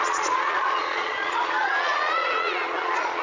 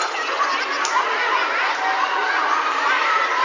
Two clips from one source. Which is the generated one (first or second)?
first